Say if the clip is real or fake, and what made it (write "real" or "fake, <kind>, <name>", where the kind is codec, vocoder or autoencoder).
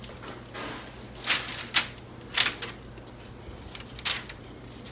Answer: real